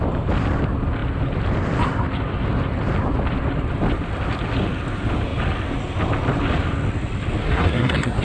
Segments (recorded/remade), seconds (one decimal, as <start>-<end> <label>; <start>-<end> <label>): 0.0-7.4 recorded; 7.4-8.2 remade